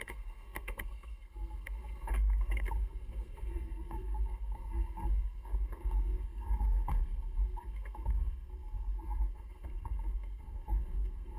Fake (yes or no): yes